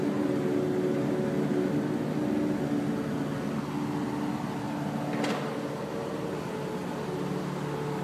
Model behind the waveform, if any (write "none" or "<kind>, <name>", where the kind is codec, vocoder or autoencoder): none